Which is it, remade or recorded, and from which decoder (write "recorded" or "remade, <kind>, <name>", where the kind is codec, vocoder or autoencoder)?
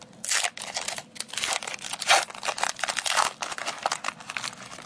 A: recorded